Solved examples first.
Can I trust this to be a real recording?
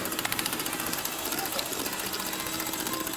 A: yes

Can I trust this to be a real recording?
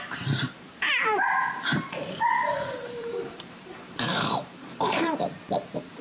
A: no